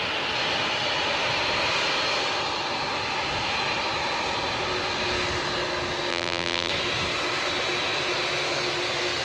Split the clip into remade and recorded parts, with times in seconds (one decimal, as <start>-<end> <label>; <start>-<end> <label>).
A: 0.0-6.1 recorded; 6.1-6.7 remade; 6.7-9.2 recorded